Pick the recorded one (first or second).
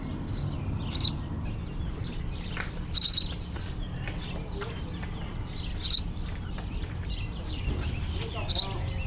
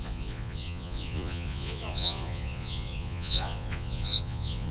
first